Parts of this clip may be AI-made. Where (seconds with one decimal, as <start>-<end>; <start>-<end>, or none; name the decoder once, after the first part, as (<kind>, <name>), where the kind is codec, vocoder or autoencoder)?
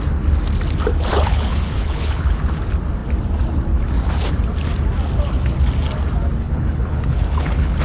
1.1-2.4 (codec, HILCodec); 6.4-7.8